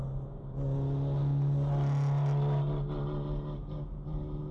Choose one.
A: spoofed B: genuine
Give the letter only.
B